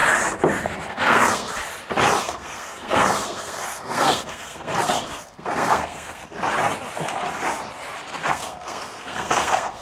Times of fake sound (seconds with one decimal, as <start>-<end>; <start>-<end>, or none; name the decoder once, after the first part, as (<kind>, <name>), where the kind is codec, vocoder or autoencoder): 0.9-1.6 (codec, SNAC); 2.2-6.3; 8.3-9.8